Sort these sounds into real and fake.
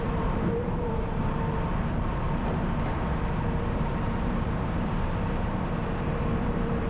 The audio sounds fake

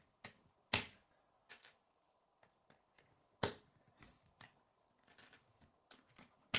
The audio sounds real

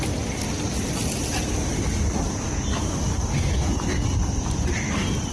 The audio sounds real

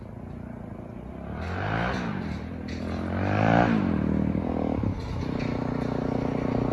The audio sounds real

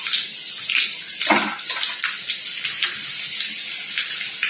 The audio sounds real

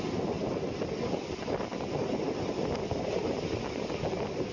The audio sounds real